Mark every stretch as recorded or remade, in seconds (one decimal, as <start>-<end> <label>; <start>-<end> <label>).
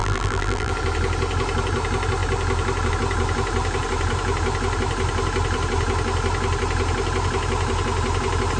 0.0-0.7 remade; 0.7-8.6 recorded